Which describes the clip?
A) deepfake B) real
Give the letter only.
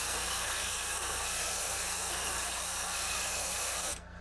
A